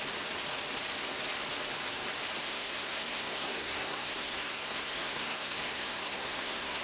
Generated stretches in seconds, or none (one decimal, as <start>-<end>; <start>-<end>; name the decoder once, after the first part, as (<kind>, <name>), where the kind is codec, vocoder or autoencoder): 2.4-6.8 (codec, SNAC)